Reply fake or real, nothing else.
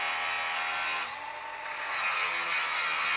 real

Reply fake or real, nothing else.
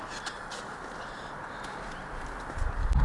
real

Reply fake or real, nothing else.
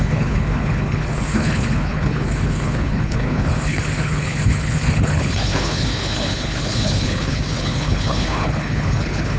fake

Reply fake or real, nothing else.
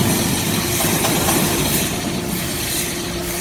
fake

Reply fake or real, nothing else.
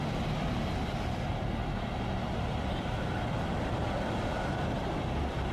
real